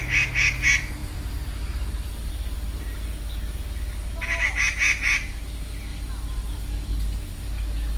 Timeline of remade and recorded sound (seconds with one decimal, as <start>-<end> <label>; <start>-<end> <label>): 0.0-8.0 recorded